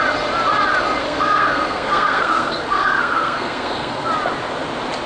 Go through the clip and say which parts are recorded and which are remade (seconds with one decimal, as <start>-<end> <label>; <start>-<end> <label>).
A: 0.0-1.0 recorded; 1.0-4.1 remade; 4.1-5.1 recorded